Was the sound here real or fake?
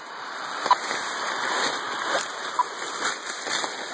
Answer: real